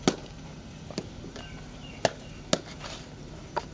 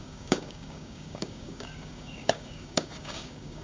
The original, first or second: first